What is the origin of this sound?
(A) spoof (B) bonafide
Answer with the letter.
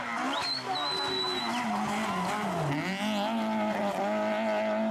B